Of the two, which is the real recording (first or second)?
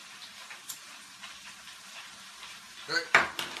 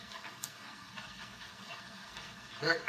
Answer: first